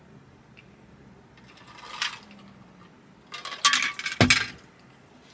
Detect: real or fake real